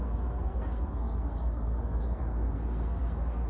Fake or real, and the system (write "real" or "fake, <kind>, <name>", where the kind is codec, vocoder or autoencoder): fake, codec, SNAC